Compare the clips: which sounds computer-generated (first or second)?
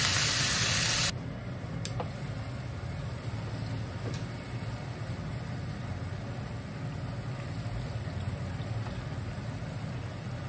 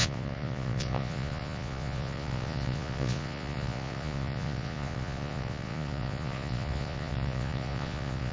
second